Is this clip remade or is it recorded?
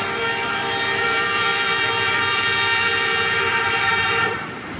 remade